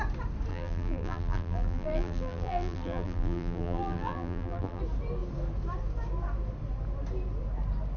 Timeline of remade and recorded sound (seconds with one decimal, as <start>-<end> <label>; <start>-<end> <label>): 0.0-0.5 recorded; 0.5-4.8 remade; 4.8-8.0 recorded